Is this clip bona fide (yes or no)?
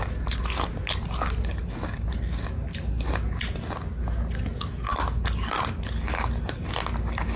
yes